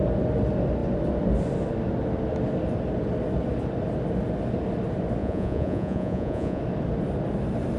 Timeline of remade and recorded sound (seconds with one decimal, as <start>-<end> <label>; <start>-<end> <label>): 0.0-5.2 recorded; 5.2-6.6 remade; 6.6-7.8 recorded